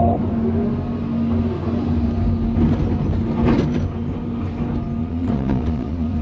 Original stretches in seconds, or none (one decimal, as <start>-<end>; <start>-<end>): 0.0-5.0